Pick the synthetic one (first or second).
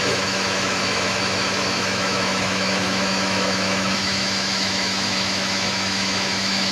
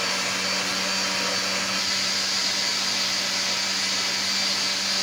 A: first